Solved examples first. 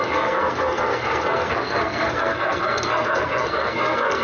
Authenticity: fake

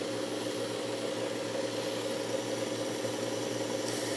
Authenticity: real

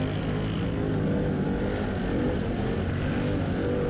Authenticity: real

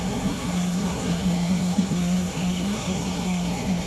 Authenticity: fake